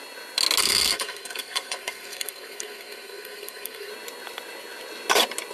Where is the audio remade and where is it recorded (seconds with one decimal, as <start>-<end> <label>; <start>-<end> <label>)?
0.0-0.6 recorded; 0.6-3.9 remade; 3.9-5.5 recorded